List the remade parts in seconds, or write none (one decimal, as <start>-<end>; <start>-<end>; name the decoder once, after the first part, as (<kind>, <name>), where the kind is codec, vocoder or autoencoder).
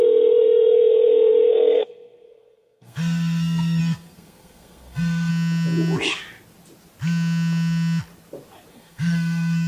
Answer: 0.0-5.3 (codec, SNAC); 8.7-9.7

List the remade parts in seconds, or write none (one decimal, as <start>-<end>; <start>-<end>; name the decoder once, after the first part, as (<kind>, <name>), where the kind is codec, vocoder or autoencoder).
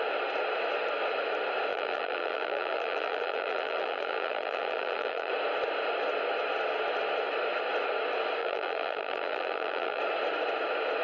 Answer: 1.7-5.3 (vocoder, BigVGAN v2); 8.4-10.0